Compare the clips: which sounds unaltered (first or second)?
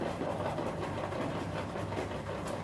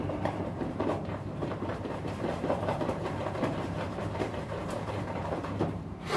first